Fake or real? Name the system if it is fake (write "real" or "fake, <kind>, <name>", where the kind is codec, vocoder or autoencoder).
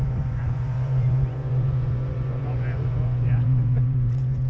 fake, vocoder, Vocos